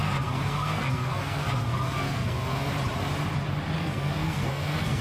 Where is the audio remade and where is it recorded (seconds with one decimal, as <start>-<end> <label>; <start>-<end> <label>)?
0.0-2.7 remade; 2.7-3.8 recorded; 3.8-5.0 remade